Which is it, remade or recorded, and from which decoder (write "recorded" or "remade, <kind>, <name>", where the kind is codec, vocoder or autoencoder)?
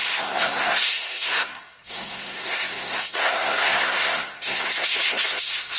remade, codec, SNAC